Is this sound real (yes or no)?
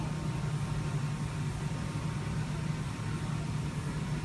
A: yes